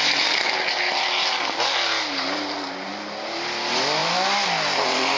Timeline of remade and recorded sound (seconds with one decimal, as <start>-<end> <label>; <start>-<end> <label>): 0.0-5.2 recorded